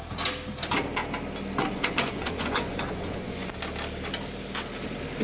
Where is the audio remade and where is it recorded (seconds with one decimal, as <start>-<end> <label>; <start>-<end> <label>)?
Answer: 0.0-1.6 recorded; 1.6-3.5 remade; 3.5-5.2 recorded